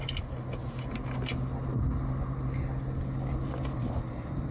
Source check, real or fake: real